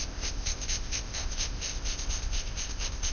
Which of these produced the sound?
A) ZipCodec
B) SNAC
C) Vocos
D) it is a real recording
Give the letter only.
A